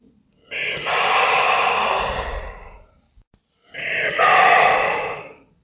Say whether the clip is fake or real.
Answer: real